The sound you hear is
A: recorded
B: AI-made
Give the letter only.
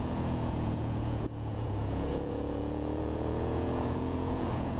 B